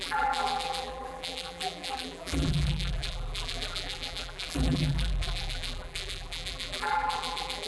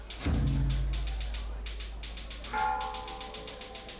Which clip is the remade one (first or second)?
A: first